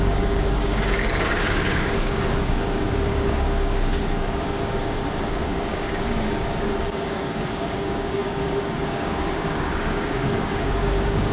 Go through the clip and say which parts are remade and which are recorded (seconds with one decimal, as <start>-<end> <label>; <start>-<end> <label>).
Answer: 0.0-11.3 remade